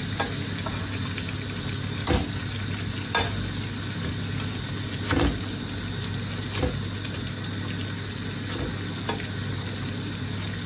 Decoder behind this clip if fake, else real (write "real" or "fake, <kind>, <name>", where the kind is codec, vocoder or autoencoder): real